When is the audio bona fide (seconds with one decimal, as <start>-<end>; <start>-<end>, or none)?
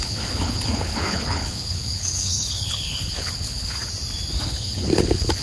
3.8-4.4